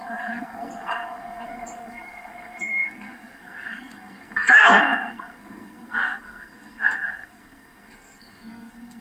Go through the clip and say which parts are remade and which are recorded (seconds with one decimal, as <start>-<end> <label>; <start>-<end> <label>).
0.0-9.0 remade